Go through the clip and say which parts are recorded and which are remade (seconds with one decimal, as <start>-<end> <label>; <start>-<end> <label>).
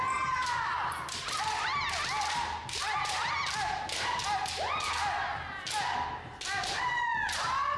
0.0-1.7 remade; 1.7-6.2 recorded; 6.2-7.8 remade